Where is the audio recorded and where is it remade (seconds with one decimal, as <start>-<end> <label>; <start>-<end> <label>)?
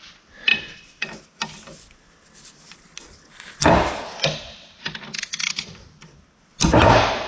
0.0-7.3 recorded